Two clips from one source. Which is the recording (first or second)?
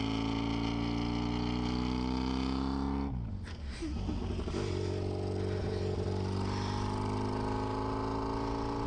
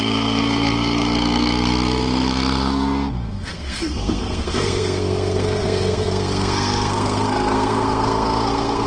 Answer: first